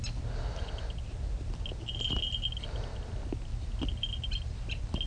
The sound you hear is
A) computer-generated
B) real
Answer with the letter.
B